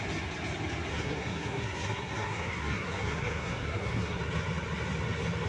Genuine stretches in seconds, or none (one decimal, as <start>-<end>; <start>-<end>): 0.0-0.9; 4.2-5.5